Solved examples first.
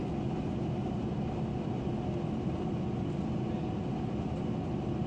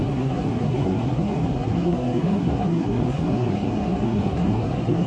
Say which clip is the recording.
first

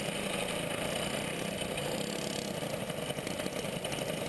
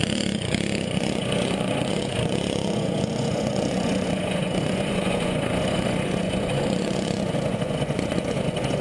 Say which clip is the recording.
first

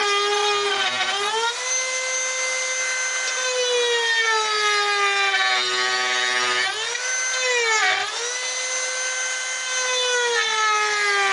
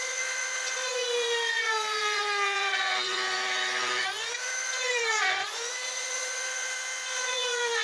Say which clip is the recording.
first